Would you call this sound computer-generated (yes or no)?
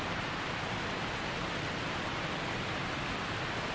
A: no